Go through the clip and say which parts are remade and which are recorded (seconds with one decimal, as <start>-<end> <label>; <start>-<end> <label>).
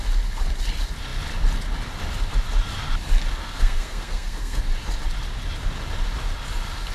0.0-3.4 recorded; 3.4-4.6 remade; 4.6-6.9 recorded